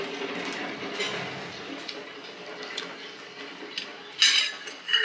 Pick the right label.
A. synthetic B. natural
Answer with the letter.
B